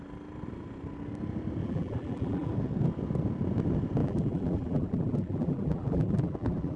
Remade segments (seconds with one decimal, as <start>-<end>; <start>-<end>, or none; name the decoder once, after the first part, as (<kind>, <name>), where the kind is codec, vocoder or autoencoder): 1.6-2.5 (vocoder, BigVGAN v2); 4.0-6.8